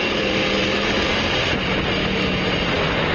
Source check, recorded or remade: recorded